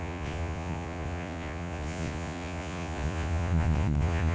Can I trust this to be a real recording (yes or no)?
no